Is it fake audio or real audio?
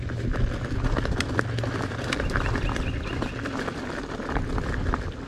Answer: real